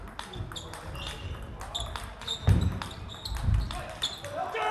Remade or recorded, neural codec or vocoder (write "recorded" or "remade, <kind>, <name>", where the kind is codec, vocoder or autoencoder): recorded